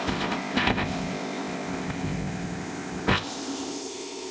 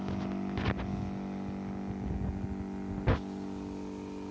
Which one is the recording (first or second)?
second